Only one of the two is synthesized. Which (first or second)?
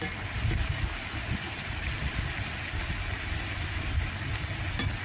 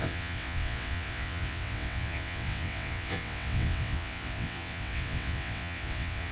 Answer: second